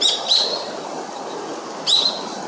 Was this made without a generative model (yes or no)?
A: yes